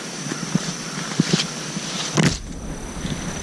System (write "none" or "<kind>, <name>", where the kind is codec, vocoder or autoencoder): none